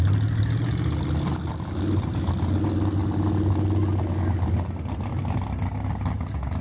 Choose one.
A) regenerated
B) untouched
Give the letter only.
B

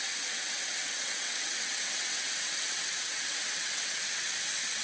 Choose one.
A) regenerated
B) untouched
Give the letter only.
A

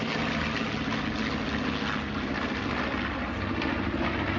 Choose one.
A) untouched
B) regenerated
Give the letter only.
A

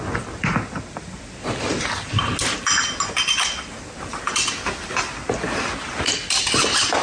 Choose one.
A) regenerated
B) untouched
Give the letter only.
B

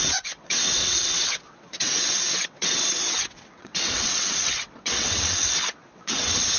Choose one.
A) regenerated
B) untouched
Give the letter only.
A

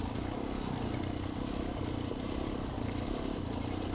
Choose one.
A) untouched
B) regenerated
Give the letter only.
A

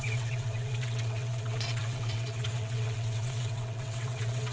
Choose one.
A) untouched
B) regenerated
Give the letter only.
B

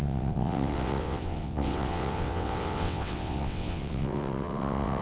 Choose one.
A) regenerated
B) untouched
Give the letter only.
A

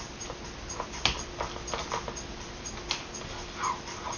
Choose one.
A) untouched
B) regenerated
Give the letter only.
A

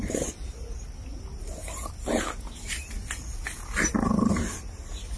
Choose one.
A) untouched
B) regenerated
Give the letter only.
A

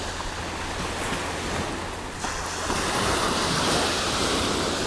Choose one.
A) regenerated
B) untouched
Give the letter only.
B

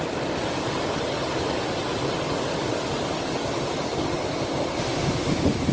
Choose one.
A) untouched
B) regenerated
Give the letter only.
A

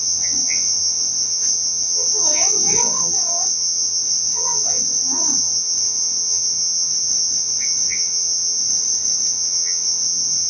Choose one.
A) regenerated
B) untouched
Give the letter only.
A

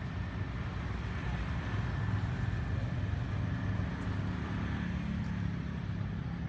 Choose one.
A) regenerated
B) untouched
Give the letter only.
B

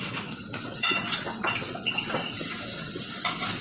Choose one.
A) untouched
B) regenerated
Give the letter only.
B